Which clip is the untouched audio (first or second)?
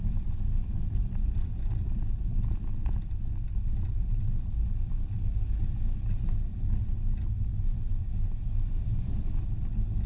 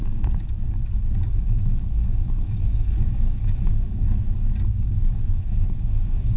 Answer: first